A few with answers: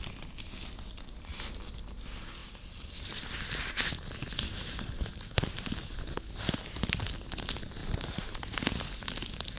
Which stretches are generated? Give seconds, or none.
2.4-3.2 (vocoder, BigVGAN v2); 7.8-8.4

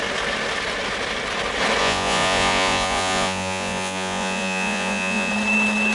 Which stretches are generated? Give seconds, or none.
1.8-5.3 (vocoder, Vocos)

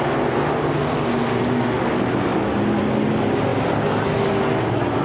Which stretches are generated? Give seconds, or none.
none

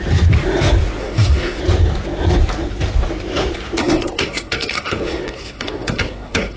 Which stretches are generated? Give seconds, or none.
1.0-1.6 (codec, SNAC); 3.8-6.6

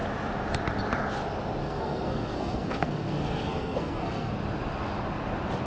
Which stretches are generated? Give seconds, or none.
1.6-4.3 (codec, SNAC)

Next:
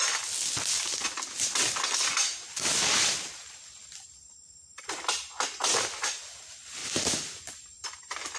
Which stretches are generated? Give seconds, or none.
6.8-7.4 (vocoder, BigVGAN v2)

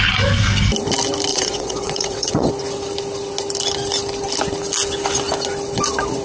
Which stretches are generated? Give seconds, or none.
1.3-2.5 (vocoder, WaveNeXt)

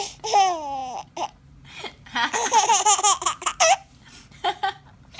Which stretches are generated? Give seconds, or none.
none